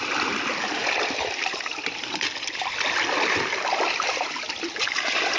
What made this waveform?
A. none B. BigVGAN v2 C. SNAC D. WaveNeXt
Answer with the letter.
B